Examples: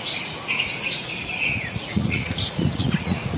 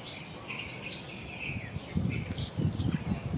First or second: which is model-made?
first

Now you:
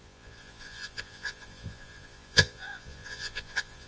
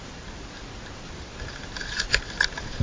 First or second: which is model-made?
first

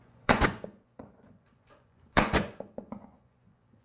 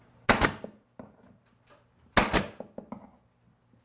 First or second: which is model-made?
first